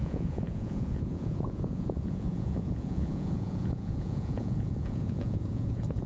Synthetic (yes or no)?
yes